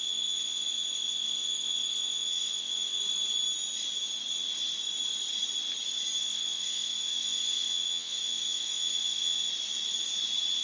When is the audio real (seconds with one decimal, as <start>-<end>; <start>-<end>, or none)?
3.0-6.2; 9.5-10.6